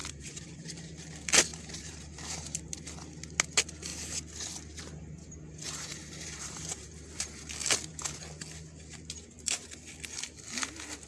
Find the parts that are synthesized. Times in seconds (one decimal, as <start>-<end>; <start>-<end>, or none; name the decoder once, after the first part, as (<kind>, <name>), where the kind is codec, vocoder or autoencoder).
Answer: 0.0-1.1 (vocoder, BigVGAN v2); 1.5-2.7; 5.9-7.4